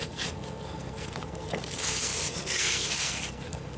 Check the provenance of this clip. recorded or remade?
remade